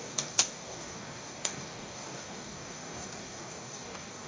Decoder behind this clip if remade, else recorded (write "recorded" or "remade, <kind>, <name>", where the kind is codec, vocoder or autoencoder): remade, codec, DAC